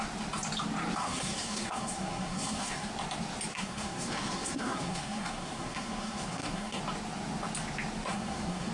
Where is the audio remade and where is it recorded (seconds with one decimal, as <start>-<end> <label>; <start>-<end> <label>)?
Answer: 0.0-1.0 recorded; 1.0-2.9 remade; 2.9-3.5 recorded; 3.5-6.8 remade; 6.8-8.1 recorded; 8.1-8.7 remade